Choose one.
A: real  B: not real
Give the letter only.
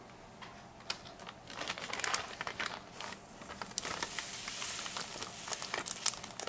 A